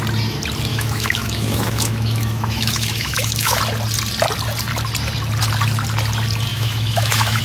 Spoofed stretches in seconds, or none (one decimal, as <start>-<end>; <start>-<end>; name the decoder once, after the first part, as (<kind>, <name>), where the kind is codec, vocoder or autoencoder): 0.7-3.6 (autoencoder, DAC-VAE); 6.5-7.4